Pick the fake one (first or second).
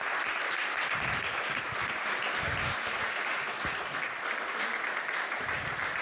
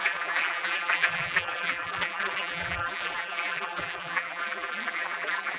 second